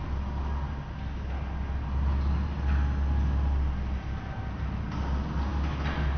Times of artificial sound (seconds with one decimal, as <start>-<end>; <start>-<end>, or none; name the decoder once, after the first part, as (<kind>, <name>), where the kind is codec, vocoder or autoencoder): none